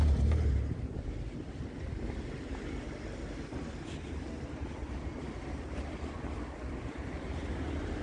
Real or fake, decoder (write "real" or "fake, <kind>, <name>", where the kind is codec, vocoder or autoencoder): real